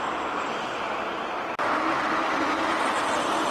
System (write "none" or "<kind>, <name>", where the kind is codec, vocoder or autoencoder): none